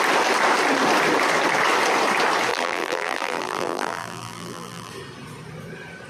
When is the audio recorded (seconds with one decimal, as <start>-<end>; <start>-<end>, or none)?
0.0-2.5; 4.9-6.1